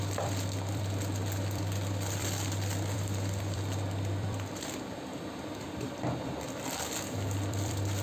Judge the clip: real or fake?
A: fake